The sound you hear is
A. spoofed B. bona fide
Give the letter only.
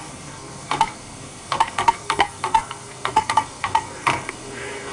A